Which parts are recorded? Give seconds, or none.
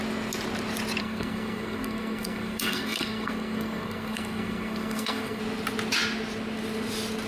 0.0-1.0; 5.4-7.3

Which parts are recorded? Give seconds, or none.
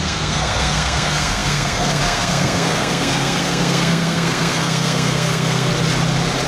5.7-6.5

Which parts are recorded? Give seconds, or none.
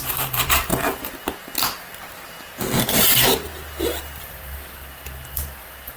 0.7-2.9; 3.5-4.2